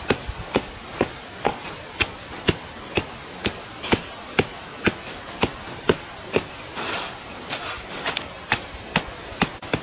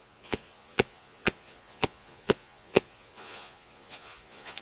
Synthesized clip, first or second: second